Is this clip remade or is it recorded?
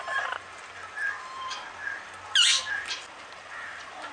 recorded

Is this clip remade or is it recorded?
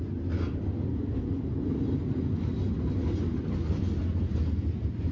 recorded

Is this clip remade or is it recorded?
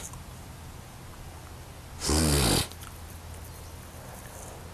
recorded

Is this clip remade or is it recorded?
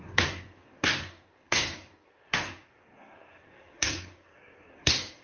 remade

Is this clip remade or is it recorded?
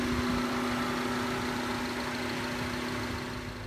recorded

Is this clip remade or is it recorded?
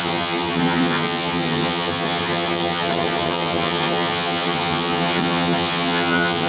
remade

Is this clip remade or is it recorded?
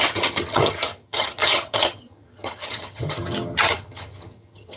remade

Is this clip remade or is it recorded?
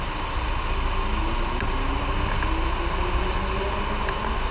recorded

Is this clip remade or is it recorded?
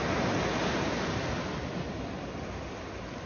recorded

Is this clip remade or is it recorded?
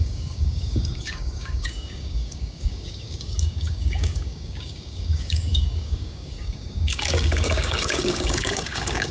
remade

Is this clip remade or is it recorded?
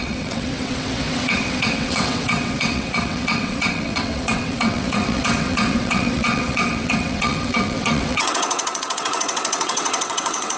remade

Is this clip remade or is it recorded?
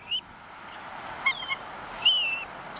recorded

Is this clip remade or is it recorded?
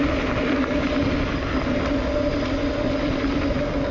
recorded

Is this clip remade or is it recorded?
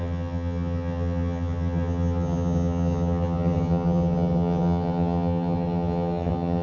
remade